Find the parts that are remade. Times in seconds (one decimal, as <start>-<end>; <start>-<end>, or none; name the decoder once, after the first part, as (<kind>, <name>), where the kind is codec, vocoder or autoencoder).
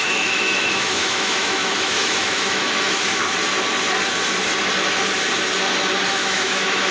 0.0-3.2 (autoencoder, DAC-VAE); 6.1-6.9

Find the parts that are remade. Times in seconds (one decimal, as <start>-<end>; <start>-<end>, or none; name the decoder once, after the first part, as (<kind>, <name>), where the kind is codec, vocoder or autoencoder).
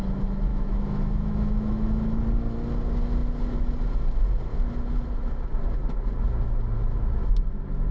0.5-2.2 (autoencoder, DAC-VAE)